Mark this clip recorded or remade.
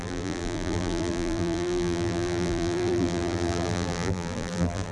remade